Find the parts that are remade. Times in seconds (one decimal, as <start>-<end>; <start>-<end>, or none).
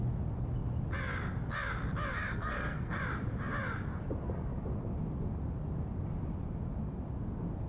2.3-3.0